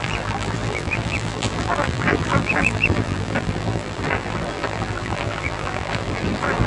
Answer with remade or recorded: remade